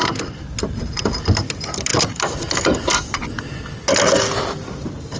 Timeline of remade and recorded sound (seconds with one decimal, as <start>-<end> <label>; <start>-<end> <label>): 0.0-5.2 recorded